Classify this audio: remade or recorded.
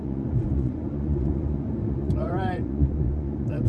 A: remade